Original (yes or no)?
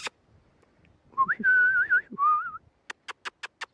yes